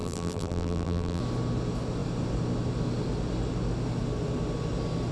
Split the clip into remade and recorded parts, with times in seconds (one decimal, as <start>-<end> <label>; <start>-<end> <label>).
0.0-1.2 remade; 1.2-5.1 recorded